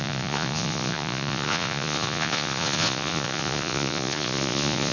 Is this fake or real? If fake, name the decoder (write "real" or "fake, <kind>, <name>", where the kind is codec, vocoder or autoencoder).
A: fake, vocoder, Vocos